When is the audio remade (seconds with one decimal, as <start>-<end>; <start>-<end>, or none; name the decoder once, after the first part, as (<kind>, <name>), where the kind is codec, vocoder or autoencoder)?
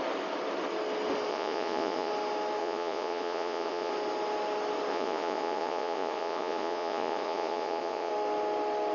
1.3-2.1 (vocoder, Vocos); 2.6-3.9; 4.9-8.1